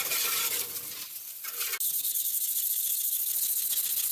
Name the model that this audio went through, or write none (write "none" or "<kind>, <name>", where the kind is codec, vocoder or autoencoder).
none